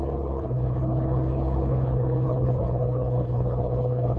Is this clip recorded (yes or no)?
no